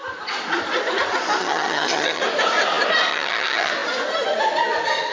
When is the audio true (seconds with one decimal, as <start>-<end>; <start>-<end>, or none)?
0.0-1.4; 2.2-3.1; 3.7-5.1